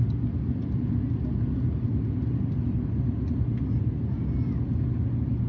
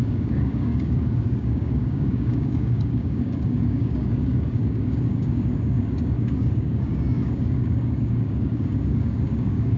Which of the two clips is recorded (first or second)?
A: first